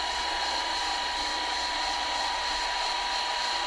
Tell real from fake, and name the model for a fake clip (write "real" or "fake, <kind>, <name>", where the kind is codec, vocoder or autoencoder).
real